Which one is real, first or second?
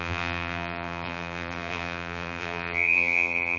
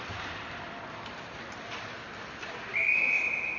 second